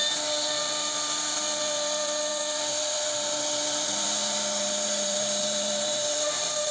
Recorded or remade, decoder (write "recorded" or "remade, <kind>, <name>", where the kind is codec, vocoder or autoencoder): remade, vocoder, BigVGAN v2